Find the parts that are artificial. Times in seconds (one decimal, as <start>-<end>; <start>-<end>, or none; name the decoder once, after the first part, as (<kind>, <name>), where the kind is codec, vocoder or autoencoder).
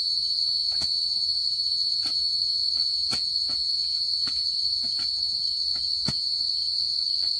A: none